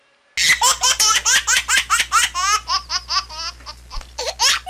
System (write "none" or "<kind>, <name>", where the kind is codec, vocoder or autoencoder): none